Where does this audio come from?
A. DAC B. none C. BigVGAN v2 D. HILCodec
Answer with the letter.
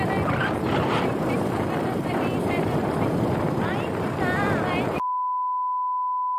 C